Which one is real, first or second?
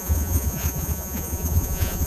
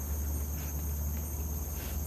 second